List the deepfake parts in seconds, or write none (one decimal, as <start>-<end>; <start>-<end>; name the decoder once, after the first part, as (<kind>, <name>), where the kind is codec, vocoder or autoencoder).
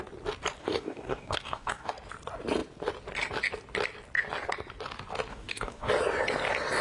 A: 0.6-1.9 (codec, DAC); 5.3-5.9